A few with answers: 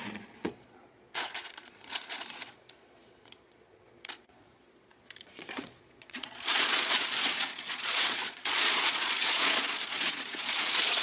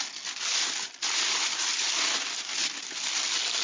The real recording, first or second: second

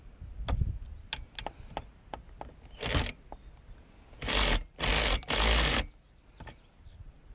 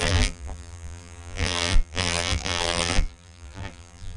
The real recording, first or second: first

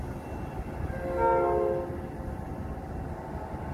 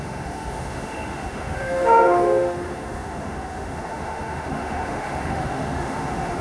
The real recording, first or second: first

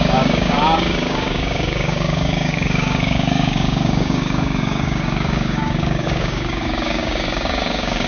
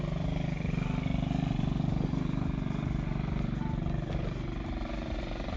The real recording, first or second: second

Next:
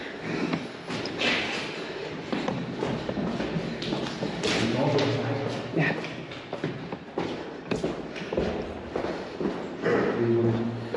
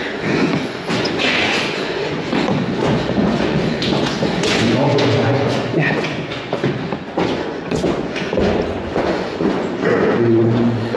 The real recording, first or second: first